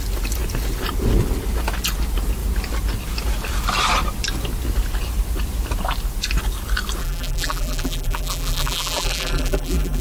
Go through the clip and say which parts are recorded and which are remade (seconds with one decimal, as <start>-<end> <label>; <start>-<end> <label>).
0.0-7.0 recorded; 7.0-10.0 remade